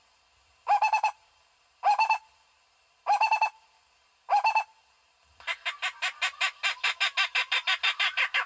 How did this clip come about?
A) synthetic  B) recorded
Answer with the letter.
B